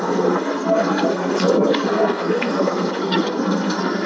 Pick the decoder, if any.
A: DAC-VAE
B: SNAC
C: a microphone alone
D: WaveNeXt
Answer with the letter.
B